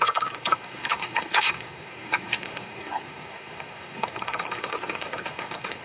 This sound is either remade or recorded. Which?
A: remade